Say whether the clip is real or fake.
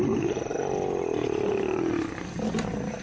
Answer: real